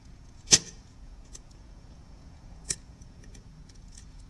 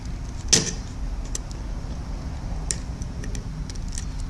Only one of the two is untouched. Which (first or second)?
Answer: second